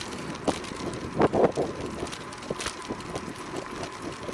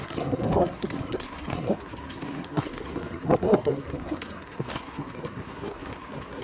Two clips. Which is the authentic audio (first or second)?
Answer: first